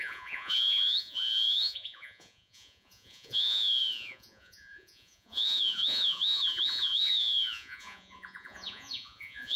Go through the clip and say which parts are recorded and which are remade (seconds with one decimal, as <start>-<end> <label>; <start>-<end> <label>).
0.0-9.6 remade